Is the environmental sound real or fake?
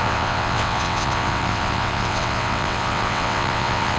fake